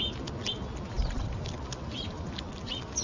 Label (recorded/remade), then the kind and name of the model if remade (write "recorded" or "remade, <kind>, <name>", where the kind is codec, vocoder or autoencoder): recorded